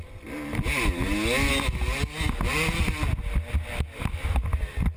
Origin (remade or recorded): recorded